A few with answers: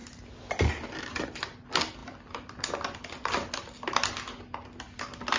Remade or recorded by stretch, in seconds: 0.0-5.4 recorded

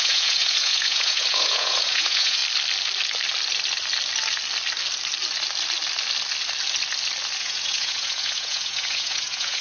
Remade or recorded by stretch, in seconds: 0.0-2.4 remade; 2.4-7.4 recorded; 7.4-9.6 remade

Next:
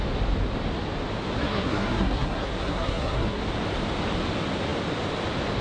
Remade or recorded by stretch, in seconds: 0.0-1.4 recorded; 1.4-3.4 remade; 3.4-5.6 recorded

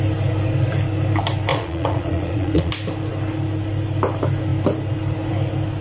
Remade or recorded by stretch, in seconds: 0.0-1.5 recorded; 1.5-2.7 remade; 2.7-5.8 recorded

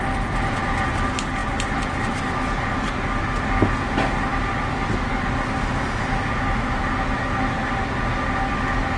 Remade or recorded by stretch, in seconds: 0.0-9.0 recorded